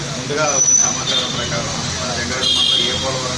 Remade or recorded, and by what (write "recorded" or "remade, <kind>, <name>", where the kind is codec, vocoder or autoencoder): recorded